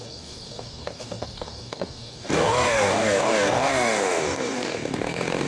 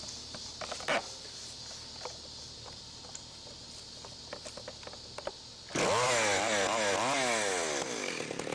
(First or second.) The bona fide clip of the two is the second